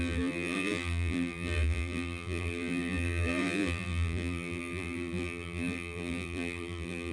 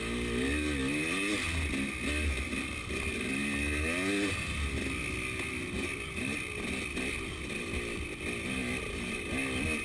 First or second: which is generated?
first